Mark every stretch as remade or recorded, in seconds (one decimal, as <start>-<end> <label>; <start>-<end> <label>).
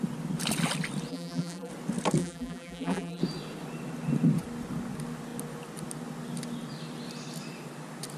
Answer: 0.0-1.1 recorded; 1.1-1.7 remade; 1.7-2.2 recorded; 2.2-3.2 remade; 3.2-8.2 recorded